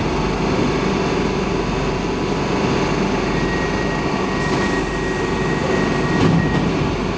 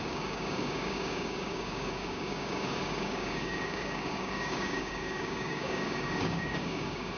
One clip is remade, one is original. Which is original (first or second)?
first